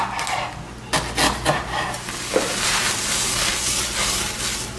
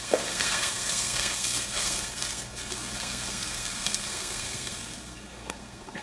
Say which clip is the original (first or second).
first